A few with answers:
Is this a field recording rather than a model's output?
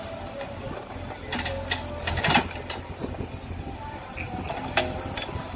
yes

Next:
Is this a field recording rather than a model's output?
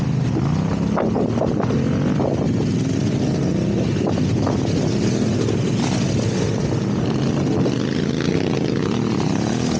yes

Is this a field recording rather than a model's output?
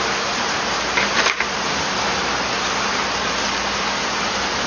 yes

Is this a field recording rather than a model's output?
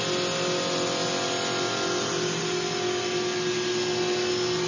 yes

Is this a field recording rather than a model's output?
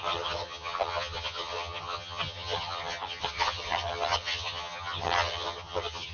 no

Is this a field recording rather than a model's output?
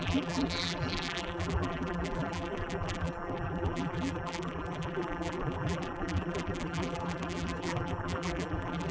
no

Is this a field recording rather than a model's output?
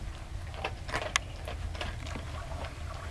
yes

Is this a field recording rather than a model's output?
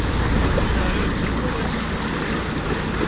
yes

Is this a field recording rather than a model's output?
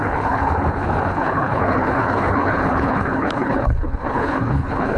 no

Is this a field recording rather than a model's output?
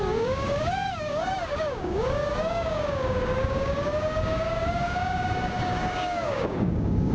no